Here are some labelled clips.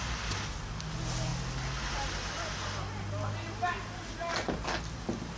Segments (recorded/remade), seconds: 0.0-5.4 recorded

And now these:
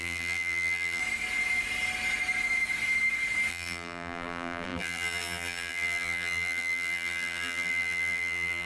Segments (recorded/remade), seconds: 0.0-1.0 remade; 1.0-3.5 recorded; 3.5-8.6 remade

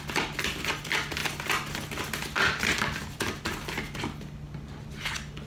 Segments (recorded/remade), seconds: 0.0-5.5 recorded

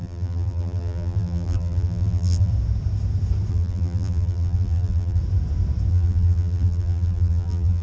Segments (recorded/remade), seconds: 0.0-2.5 remade; 2.5-3.5 recorded; 3.5-5.2 remade; 5.2-5.9 recorded; 5.9-7.8 remade

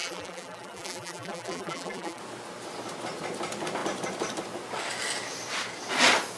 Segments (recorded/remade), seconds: 0.0-2.2 remade; 2.2-6.4 recorded

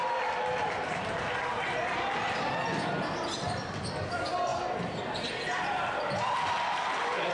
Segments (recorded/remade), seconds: 0.0-4.5 recorded; 4.5-7.3 remade

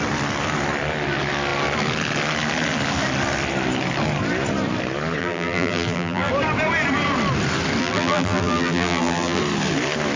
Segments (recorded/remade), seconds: 0.0-5.2 recorded; 5.2-6.3 remade; 6.3-7.8 recorded; 7.8-9.4 remade; 9.4-10.2 recorded